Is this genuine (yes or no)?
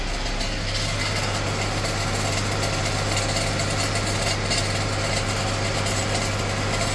yes